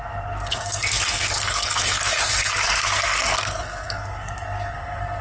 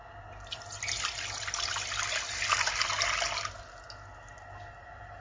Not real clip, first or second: first